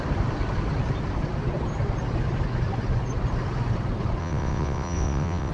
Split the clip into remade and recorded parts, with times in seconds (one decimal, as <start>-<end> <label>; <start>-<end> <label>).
0.0-4.2 recorded; 4.2-5.5 remade